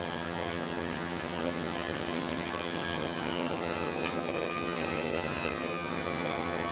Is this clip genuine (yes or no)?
no